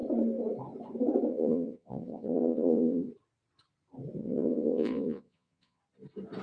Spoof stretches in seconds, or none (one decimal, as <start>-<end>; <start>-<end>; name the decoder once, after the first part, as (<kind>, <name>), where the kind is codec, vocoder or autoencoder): 1.3-3.1 (vocoder, Vocos); 4.2-5.8